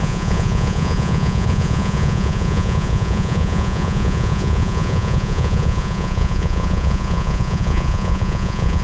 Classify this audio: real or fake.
fake